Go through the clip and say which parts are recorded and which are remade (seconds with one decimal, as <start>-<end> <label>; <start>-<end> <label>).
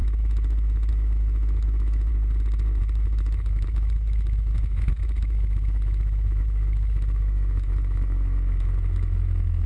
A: 0.0-2.1 remade; 2.1-2.8 recorded; 2.8-9.7 remade